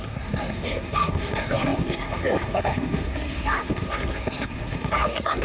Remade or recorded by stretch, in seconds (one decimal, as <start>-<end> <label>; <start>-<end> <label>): 0.0-5.4 remade